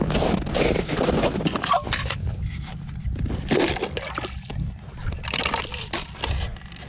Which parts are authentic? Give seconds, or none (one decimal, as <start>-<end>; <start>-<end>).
0.0-6.9